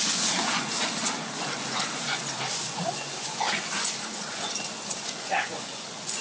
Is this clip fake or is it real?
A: fake